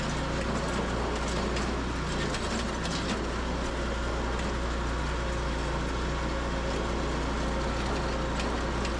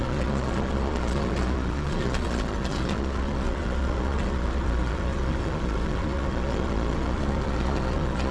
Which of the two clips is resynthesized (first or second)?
second